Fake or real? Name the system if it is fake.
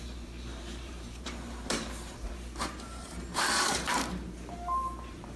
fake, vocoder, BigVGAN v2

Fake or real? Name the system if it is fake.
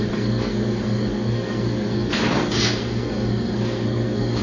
fake, codec, SNAC